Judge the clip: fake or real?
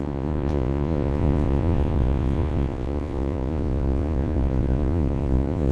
fake